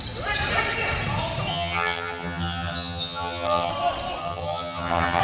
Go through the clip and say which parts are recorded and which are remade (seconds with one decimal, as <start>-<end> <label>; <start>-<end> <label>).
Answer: 0.0-1.5 recorded; 1.5-3.7 remade; 3.7-4.2 recorded; 4.2-5.2 remade